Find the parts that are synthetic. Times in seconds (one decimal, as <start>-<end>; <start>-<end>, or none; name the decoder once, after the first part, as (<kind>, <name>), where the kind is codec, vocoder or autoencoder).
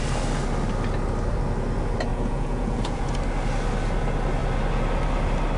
2.1-3.1 (vocoder, Vocos)